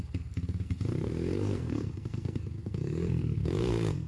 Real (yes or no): no